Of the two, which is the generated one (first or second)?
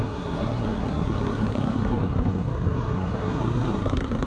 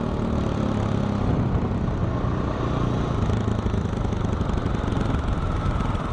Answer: first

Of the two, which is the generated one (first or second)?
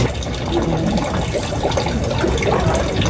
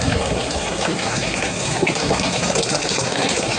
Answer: second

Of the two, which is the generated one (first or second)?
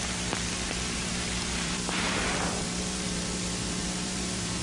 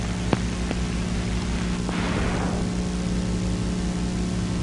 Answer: first